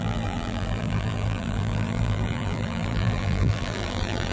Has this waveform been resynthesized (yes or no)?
yes